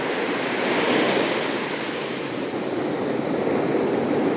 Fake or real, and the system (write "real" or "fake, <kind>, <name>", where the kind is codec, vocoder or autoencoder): real